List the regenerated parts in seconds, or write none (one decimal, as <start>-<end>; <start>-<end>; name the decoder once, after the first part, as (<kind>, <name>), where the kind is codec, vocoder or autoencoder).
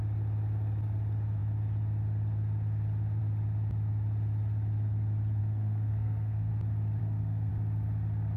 5.4-6.5 (codec, SNAC); 7.0-7.5